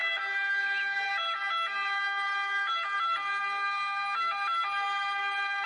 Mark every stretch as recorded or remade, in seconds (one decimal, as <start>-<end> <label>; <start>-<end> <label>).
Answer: 0.0-5.7 recorded